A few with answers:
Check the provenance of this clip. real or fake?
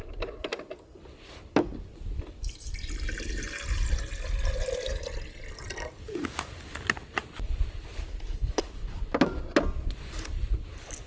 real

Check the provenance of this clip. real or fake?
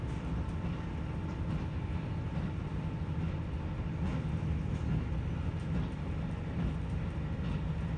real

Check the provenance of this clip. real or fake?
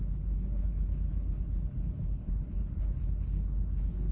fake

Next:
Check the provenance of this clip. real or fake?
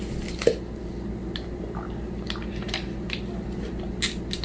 real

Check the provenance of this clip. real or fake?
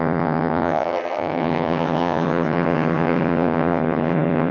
fake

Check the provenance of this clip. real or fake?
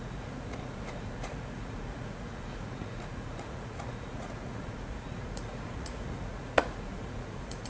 fake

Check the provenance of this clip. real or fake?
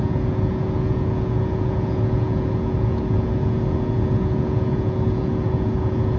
fake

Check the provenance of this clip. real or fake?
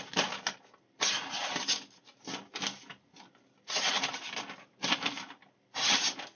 real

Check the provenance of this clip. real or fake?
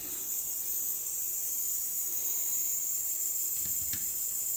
real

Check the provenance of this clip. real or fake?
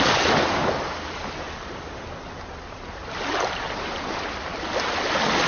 real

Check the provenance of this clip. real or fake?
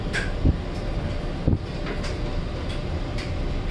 real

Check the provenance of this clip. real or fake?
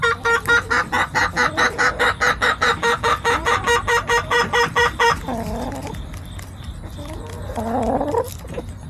real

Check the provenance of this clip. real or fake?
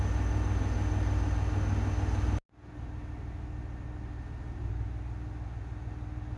real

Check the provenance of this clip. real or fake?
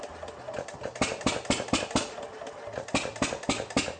real